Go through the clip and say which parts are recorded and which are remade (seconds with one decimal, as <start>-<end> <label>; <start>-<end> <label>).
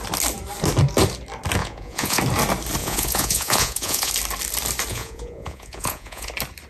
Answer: 0.0-1.6 recorded; 1.6-2.2 remade; 2.2-2.8 recorded; 2.8-4.1 remade; 4.1-4.9 recorded; 4.9-6.3 remade; 6.3-6.7 recorded